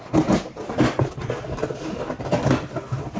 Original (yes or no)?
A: yes